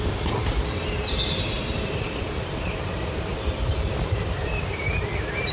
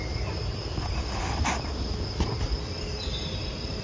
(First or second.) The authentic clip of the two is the second